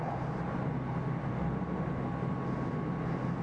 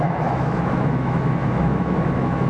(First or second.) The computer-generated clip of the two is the second